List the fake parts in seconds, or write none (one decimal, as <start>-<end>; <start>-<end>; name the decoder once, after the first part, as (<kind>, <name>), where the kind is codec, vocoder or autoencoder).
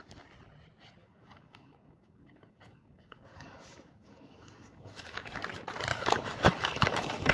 1.0-5.4 (codec, DAC); 5.9-7.3